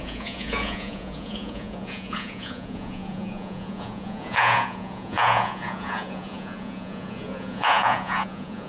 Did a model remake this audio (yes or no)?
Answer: yes